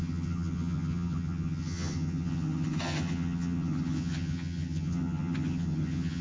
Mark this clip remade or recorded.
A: remade